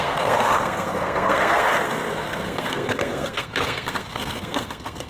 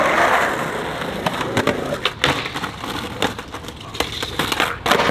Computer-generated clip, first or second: first